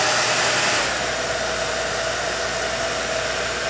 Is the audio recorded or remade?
recorded